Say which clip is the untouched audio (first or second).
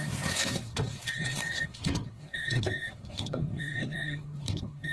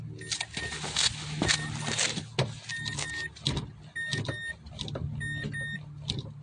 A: second